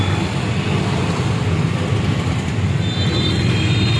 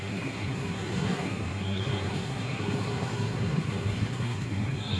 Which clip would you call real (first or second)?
first